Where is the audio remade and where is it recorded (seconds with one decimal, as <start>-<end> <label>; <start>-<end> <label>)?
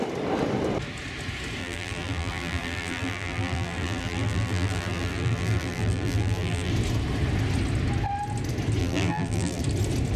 0.0-1.6 recorded; 1.6-6.7 remade; 6.7-8.8 recorded; 8.8-9.6 remade; 9.6-10.2 recorded